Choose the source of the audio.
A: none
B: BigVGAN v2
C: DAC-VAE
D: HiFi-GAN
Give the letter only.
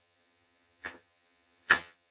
D